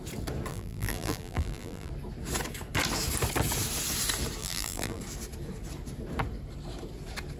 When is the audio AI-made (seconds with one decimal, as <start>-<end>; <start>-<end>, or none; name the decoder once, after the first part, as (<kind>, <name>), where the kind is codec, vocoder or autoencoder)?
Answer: 0.5-1.9 (vocoder, BigVGAN v2); 4.4-5.0